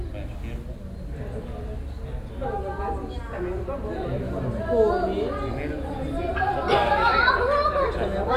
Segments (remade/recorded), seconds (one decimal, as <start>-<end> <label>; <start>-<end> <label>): 0.0-8.4 recorded